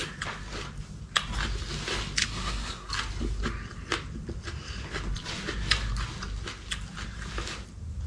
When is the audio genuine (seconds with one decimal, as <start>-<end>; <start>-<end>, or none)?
0.0-2.2; 2.9-8.1